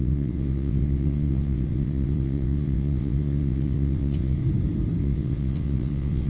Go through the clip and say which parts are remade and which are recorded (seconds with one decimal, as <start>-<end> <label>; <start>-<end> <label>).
0.0-4.4 remade; 4.4-5.0 recorded; 5.0-6.3 remade